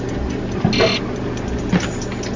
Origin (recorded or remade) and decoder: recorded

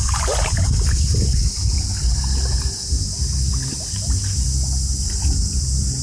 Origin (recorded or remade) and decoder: recorded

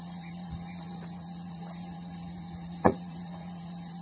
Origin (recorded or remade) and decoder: remade, vocoder, Vocos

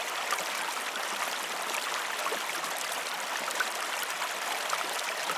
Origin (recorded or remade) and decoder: recorded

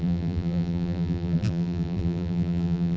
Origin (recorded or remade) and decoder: remade, vocoder, BigVGAN v2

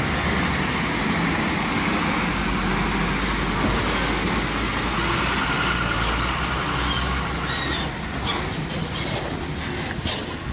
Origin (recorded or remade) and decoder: recorded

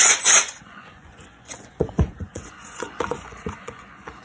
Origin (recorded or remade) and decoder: remade, vocoder, Vocos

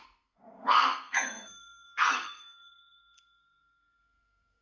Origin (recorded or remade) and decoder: remade, codec, SNAC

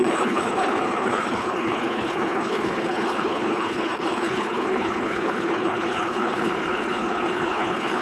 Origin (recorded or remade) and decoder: remade, codec, HILCodec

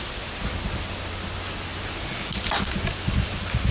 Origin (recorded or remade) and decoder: recorded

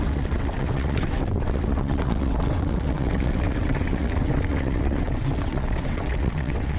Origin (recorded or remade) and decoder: remade, vocoder, WaveNeXt